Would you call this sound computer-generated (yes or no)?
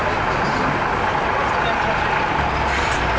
no